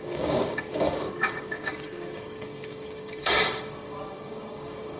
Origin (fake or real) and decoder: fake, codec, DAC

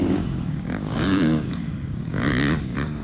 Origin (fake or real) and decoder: fake, codec, DAC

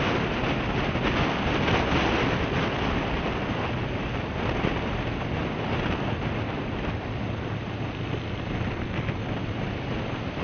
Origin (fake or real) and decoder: real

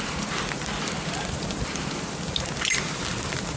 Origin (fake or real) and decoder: real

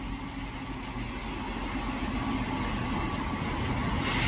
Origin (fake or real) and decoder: real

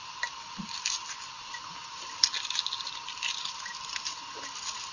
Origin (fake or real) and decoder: real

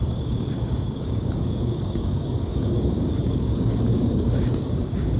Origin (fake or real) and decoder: fake, codec, DAC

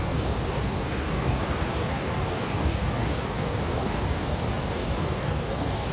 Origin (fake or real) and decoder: fake, codec, DAC